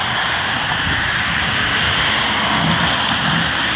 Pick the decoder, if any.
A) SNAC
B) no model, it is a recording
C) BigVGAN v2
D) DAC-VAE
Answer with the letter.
B